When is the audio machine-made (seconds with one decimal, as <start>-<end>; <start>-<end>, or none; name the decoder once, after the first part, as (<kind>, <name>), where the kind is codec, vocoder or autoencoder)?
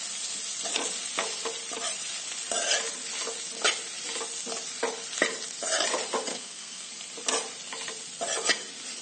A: 6.3-6.9 (codec, SNAC)